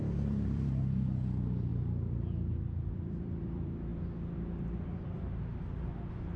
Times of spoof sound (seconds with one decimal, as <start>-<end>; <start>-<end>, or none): 0.0-1.7; 2.9-3.9